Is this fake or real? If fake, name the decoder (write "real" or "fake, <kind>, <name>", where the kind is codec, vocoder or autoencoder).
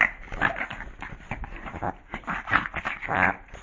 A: real